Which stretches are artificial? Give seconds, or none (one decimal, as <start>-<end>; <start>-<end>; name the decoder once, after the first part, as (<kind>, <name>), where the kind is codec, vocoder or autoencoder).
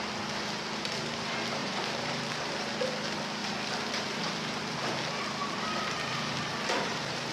1.6-2.3 (vocoder, BigVGAN v2); 3.4-4.9; 5.4-7.3